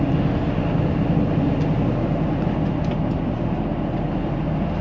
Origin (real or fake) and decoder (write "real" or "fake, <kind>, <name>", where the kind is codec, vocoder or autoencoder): real